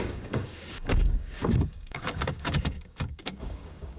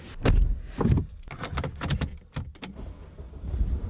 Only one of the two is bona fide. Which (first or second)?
second